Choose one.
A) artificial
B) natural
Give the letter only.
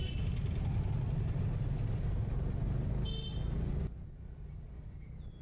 B